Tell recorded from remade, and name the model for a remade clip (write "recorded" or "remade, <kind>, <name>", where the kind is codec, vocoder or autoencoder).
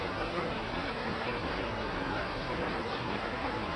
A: remade, codec, SNAC